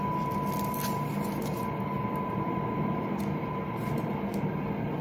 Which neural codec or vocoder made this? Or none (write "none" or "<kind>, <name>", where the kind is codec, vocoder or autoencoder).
none